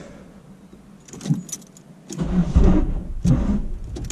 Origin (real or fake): real